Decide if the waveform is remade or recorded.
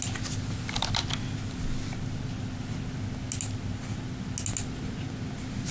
recorded